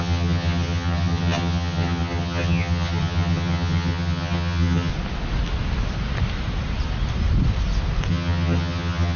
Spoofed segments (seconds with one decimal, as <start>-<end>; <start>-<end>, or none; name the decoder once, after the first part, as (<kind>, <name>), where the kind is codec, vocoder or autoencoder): 0.0-4.9 (vocoder, HiFi-GAN); 8.1-9.2

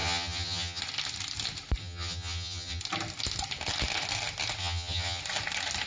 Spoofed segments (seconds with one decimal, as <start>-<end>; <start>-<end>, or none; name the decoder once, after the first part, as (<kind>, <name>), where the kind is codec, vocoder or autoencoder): 0.0-0.8 (vocoder, HiFi-GAN); 1.8-2.8; 4.6-5.2

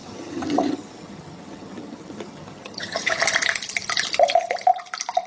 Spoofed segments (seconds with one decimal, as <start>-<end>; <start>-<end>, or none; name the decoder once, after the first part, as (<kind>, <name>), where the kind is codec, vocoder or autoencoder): 0.0-3.2 (vocoder, HiFi-GAN)

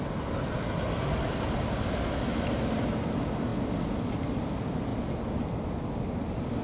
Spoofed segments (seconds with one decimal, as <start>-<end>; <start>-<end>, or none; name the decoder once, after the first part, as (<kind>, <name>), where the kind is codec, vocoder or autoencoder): none